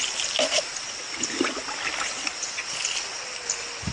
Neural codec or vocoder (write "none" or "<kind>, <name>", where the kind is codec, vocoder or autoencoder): none